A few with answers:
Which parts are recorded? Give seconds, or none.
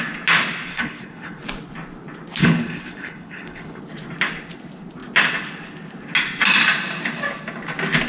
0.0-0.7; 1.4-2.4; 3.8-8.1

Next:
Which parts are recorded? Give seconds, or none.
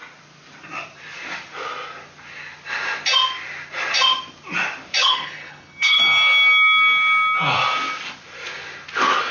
0.0-5.0; 6.0-9.3